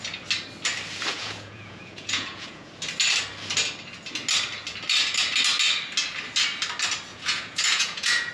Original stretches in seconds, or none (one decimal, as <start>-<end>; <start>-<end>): 0.0-1.1; 2.7-7.1